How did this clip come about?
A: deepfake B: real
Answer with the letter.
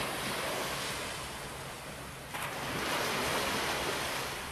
B